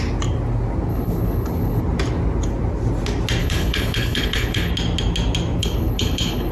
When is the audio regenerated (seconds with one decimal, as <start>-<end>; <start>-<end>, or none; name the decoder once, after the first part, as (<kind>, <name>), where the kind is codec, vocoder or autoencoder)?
0.9-1.8 (codec, HILCodec); 3.4-4.7; 5.6-6.5